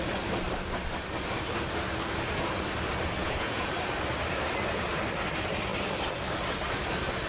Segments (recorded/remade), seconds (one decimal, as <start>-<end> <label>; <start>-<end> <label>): 0.0-3.2 recorded; 3.2-3.7 remade; 3.7-7.3 recorded